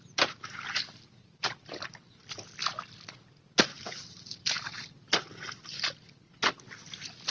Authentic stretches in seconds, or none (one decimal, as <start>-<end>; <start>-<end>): 0.0-7.3